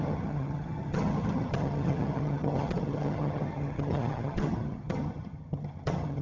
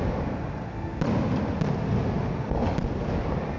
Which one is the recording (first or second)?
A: second